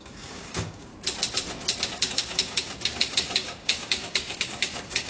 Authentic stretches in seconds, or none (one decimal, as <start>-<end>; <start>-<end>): 0.9-2.1